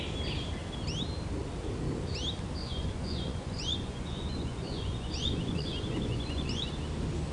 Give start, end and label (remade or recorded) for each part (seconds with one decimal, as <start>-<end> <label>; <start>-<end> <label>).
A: 0.0-2.6 recorded; 2.6-6.7 remade; 6.7-7.3 recorded